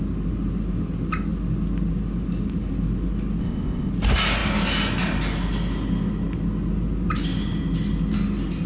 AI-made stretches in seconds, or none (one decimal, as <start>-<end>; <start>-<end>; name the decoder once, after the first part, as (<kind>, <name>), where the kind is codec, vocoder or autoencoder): 3.4-3.9 (codec, ZipCodec)